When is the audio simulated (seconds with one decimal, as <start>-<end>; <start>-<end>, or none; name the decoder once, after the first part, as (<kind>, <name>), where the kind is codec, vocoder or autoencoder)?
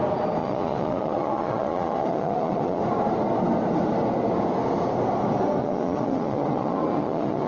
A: 0.4-2.8 (vocoder, Vocos); 5.6-7.5